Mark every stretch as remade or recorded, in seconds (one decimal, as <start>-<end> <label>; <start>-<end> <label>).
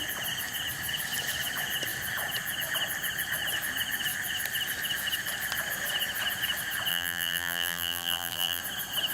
0.0-6.9 recorded; 6.9-8.6 remade; 8.6-9.1 recorded